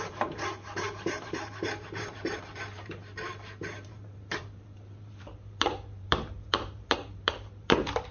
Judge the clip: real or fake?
fake